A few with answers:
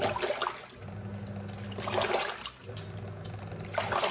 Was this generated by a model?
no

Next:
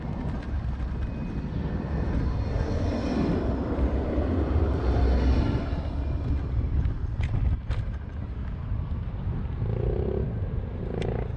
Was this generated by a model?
no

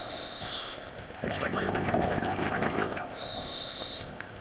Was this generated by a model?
yes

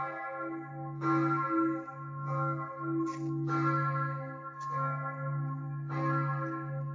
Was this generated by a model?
no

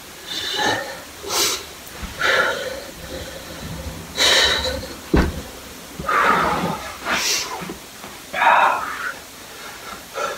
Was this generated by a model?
yes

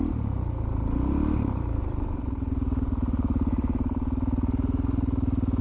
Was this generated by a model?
no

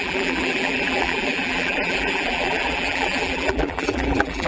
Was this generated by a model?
yes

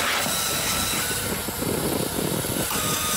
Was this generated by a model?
no